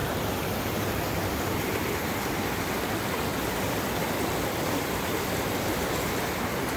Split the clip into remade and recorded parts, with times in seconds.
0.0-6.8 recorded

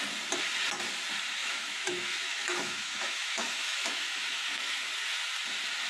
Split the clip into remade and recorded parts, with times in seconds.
0.0-1.4 recorded; 1.4-4.9 remade; 4.9-5.9 recorded